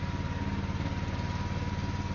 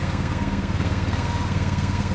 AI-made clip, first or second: second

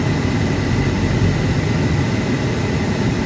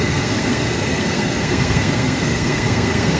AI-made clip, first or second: second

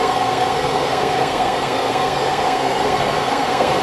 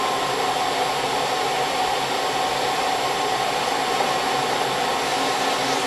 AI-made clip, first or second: first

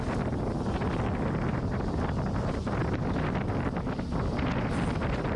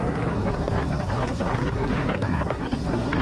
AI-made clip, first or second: second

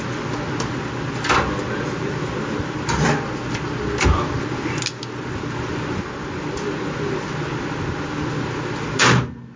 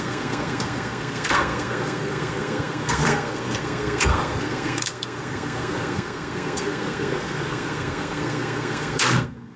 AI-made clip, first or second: second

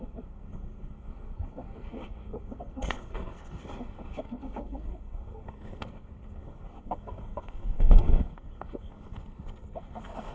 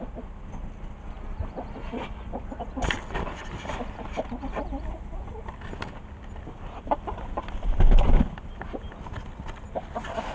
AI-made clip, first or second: first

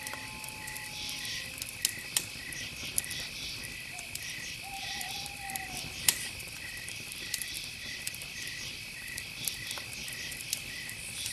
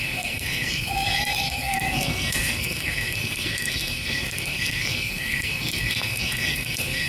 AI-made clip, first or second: second